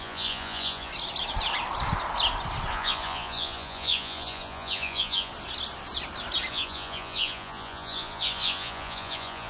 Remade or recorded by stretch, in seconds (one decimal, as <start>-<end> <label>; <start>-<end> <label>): 0.0-0.9 remade; 0.9-2.7 recorded; 2.7-5.3 remade; 5.3-6.5 recorded; 6.5-9.5 remade

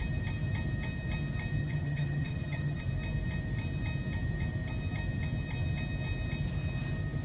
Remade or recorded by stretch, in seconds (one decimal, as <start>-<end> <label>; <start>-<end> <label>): 0.0-1.6 recorded; 1.6-2.8 remade; 2.8-7.2 recorded

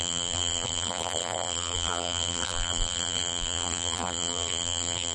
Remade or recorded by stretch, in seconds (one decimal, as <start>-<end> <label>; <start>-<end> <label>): 0.0-5.1 remade

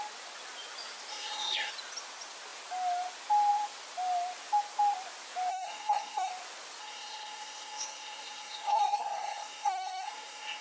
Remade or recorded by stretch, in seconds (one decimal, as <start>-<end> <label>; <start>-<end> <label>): 0.0-1.1 recorded; 1.1-1.7 remade; 1.7-5.5 recorded; 5.5-6.3 remade; 6.3-6.8 recorded; 6.8-10.6 remade